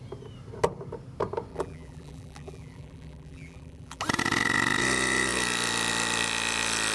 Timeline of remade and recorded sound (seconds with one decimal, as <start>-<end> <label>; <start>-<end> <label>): 0.0-1.5 recorded; 1.5-4.0 remade; 4.0-6.9 recorded